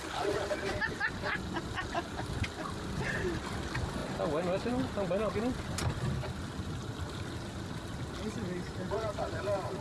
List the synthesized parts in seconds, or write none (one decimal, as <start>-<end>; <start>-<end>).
none